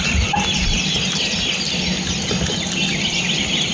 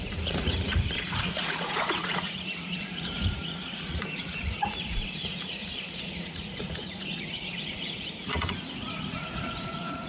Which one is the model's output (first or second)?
second